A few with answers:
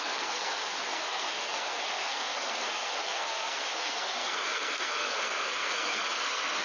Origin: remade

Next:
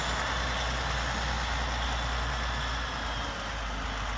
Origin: recorded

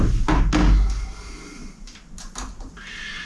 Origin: recorded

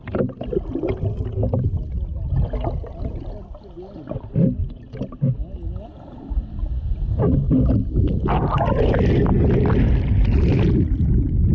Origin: recorded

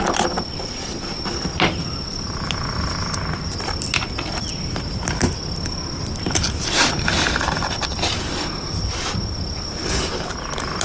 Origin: recorded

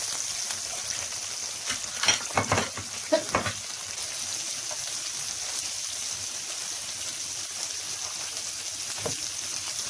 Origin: recorded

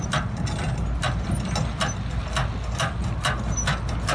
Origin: recorded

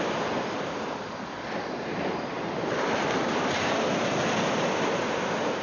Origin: recorded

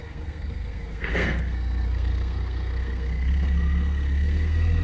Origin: remade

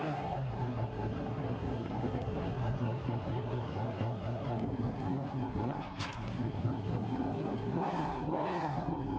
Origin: remade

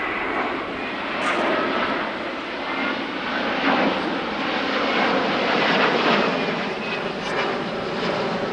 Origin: recorded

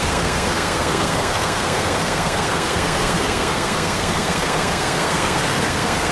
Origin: remade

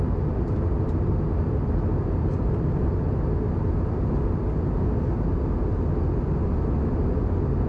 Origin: recorded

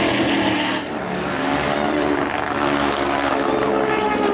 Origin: recorded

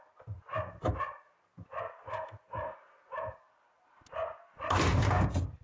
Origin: recorded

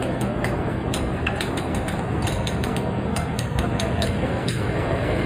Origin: remade